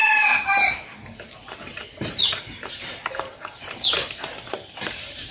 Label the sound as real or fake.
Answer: fake